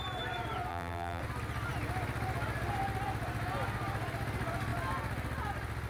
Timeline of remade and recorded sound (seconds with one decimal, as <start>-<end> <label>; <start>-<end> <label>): 0.0-0.7 recorded; 0.7-1.2 remade; 1.2-5.9 recorded